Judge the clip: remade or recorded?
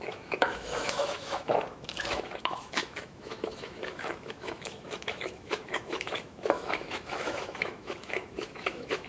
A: remade